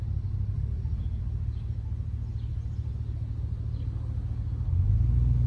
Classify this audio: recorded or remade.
recorded